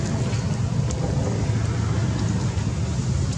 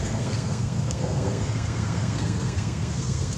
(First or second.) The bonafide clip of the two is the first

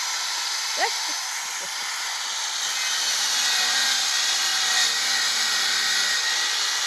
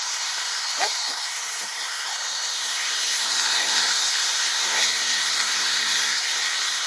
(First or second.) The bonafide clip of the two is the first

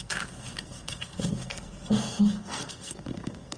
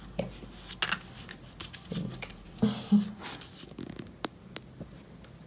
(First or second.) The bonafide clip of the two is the second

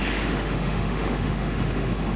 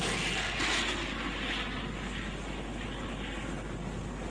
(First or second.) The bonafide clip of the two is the second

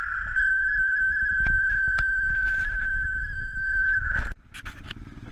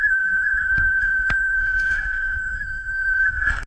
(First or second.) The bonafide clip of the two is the first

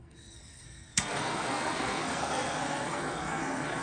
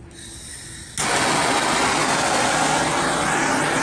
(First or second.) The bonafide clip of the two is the second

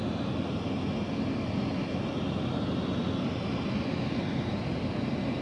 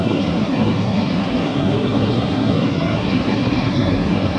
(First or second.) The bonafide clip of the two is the first